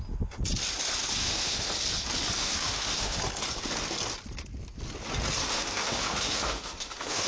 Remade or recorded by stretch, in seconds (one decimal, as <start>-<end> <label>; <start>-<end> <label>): 0.0-1.2 recorded; 1.2-1.7 remade; 1.7-2.4 recorded; 2.4-3.2 remade; 3.2-5.5 recorded; 5.5-7.3 remade